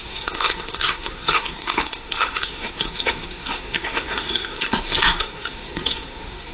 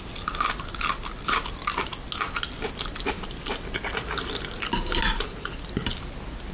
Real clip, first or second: second